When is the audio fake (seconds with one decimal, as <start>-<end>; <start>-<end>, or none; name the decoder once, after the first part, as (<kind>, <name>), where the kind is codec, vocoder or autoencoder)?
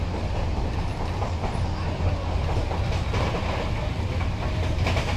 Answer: none